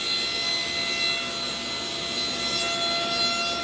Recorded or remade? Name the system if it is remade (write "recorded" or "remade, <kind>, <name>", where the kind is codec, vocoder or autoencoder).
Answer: recorded